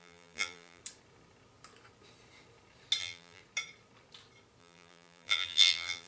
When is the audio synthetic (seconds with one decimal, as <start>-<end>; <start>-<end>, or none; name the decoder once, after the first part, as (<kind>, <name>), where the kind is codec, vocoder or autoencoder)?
0.0-0.8 (vocoder, BigVGAN v2); 3.0-3.4; 4.6-6.1